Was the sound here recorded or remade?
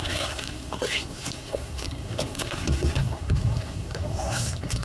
remade